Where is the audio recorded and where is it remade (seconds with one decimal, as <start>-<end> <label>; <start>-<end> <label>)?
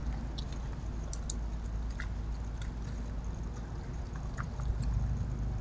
0.0-5.6 recorded